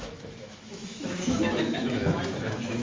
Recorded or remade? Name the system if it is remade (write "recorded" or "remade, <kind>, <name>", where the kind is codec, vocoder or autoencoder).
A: remade, autoencoder, DAC-VAE